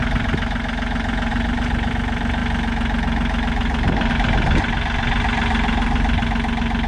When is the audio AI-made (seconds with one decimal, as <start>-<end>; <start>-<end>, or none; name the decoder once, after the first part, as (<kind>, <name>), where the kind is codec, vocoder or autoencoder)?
1.3-1.9 (vocoder, BigVGAN v2)